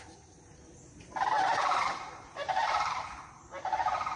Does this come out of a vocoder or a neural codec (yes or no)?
yes